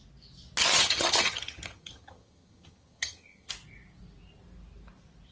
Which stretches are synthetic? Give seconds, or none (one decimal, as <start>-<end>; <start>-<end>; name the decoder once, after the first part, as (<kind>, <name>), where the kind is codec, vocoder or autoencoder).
0.6-3.5 (vocoder, HiFi-GAN)